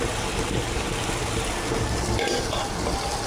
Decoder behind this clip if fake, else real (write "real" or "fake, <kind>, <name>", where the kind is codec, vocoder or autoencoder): real